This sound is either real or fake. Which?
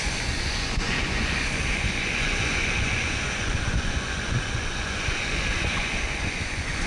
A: fake